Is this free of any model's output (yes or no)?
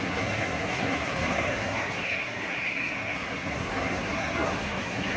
no